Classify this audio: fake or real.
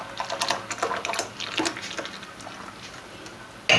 real